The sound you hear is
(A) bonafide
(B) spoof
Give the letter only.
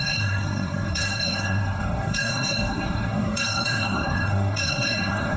B